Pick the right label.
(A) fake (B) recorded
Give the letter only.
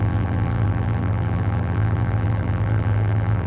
A